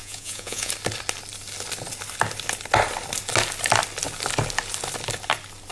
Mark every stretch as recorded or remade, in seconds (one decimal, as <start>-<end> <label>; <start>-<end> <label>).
0.0-0.7 remade; 0.7-5.7 recorded